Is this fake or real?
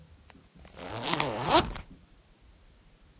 real